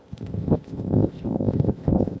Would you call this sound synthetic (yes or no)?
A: yes